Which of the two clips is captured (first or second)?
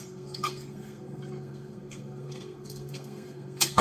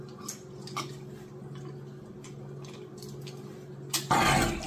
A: second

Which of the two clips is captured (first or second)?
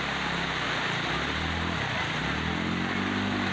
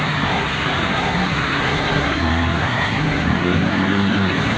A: first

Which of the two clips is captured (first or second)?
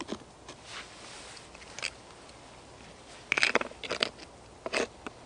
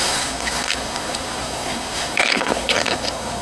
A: first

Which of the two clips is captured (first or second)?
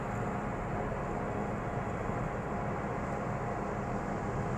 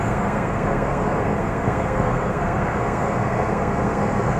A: first